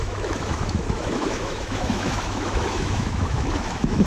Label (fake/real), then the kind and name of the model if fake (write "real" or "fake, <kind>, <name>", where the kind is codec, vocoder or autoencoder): fake, autoencoder, DAC-VAE